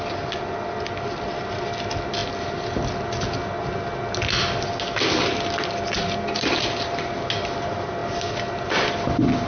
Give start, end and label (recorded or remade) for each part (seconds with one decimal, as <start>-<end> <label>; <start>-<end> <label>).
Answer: 0.0-9.5 recorded